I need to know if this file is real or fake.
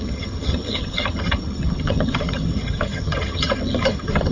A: fake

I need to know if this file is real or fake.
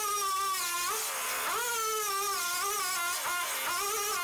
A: real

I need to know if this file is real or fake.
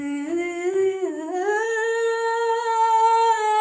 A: fake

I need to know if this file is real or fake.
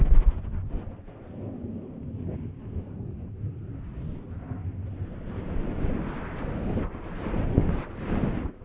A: real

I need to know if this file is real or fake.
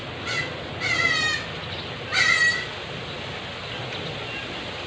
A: real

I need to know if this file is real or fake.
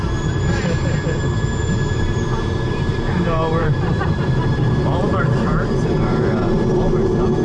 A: fake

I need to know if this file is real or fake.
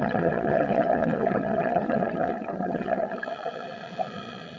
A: fake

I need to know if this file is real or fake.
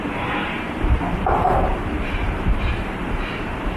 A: fake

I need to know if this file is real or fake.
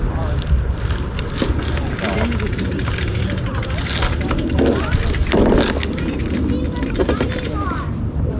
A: fake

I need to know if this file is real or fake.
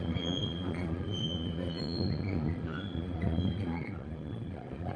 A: fake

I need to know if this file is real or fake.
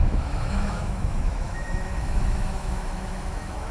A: fake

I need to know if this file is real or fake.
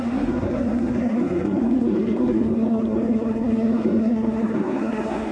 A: fake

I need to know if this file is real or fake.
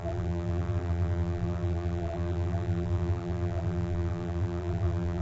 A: fake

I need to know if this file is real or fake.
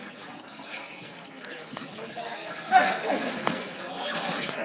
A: fake